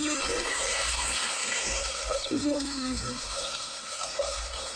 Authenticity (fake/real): fake